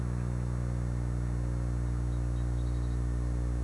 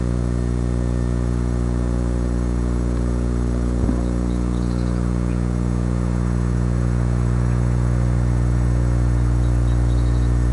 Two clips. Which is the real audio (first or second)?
first